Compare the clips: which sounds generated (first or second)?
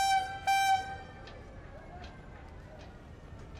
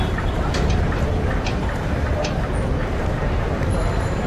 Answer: second